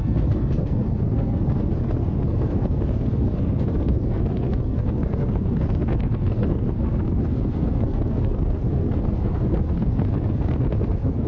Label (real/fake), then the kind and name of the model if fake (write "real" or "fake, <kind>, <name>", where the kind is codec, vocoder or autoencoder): fake, codec, SNAC